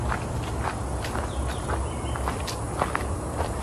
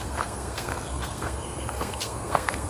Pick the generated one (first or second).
second